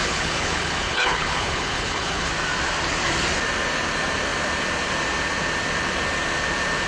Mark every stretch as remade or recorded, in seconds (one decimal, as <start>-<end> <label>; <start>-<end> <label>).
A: 0.0-2.3 remade; 2.3-6.9 recorded